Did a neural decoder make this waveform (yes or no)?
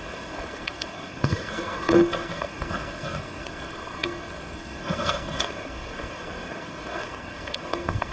yes